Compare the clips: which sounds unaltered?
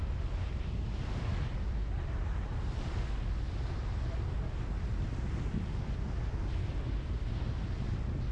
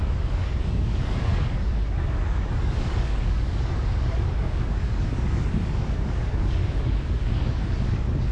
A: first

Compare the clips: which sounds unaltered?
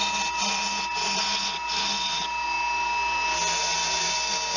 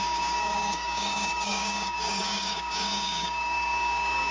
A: first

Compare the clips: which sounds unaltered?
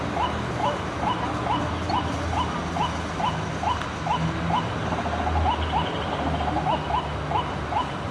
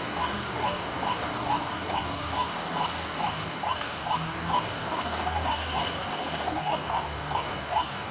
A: first